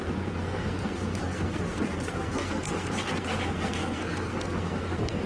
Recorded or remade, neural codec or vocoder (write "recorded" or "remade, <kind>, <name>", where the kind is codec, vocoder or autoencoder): remade, codec, SNAC